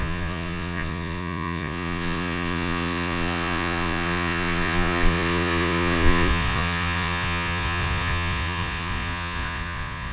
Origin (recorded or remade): remade